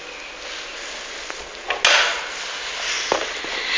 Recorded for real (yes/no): yes